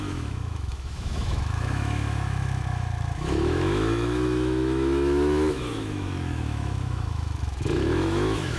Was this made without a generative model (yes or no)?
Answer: no